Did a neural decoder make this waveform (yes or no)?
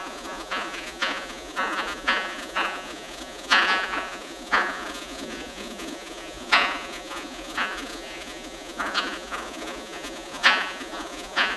yes